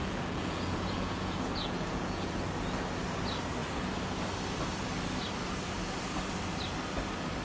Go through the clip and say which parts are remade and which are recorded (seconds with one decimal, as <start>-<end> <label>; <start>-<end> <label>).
0.0-2.4 remade; 2.4-7.4 recorded